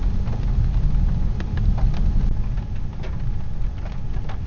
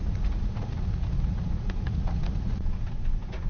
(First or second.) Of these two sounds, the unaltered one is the first